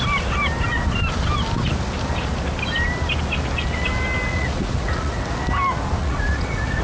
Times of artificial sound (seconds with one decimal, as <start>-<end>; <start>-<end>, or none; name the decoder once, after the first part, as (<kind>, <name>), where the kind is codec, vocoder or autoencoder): 4.3-5.2 (vocoder, Vocos); 6.0-6.8